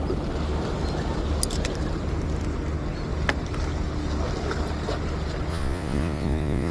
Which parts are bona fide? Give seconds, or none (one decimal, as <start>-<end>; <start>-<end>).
0.0-5.5